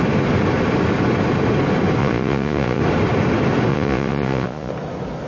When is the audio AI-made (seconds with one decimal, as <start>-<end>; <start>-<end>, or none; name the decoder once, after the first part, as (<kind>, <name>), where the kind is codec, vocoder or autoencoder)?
2.0-2.8 (vocoder, Vocos); 3.7-4.7